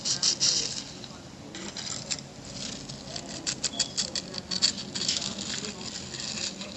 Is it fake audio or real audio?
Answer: real